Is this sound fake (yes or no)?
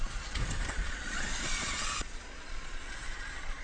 yes